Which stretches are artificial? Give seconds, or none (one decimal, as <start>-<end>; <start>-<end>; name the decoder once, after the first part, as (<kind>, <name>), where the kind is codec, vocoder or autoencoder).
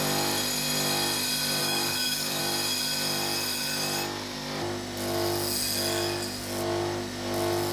1.6-2.4 (codec, DAC)